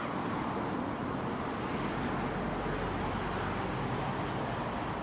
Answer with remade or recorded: recorded